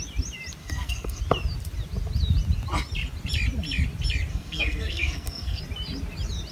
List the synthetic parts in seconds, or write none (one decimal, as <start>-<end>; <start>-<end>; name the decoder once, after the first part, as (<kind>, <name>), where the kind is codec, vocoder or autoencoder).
0.6-1.2 (codec, SNAC); 4.3-5.6

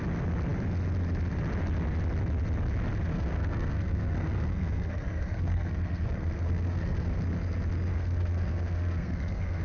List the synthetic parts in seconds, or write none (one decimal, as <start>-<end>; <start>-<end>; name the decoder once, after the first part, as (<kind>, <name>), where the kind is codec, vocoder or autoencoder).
3.1-7.2 (codec, SNAC); 7.9-9.6

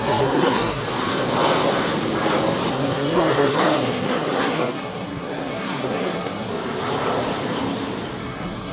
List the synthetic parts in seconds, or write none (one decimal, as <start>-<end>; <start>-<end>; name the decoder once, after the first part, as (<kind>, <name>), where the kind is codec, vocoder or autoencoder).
0.0-0.8 (codec, SNAC); 2.7-6.5; 8.2-8.7

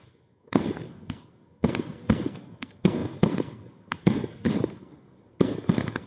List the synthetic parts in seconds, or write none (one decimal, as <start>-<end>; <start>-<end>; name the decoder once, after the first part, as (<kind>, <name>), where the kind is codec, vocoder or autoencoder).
0.0-6.1 (codec, SNAC)